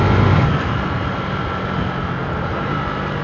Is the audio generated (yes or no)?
no